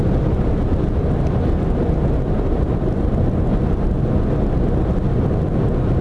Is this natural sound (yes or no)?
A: yes